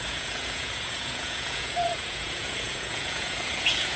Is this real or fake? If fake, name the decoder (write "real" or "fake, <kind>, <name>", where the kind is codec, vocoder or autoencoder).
fake, vocoder, Vocos